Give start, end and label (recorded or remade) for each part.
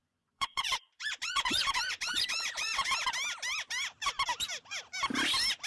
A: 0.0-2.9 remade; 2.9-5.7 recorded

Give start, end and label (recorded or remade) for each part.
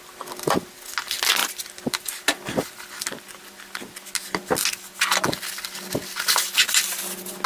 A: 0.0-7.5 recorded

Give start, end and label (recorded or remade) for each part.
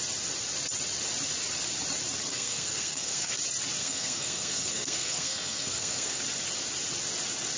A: 0.0-2.3 recorded; 2.3-3.3 remade; 3.3-3.8 recorded; 3.8-6.2 remade; 6.2-7.6 recorded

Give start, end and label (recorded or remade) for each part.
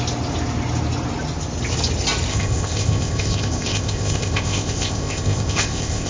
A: 0.0-2.3 recorded; 2.3-6.1 remade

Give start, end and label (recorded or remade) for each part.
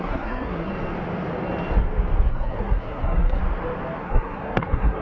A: 0.0-0.7 remade; 0.7-2.3 recorded; 2.3-3.4 remade; 3.4-4.0 recorded; 4.0-5.0 remade